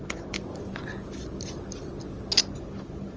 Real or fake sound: real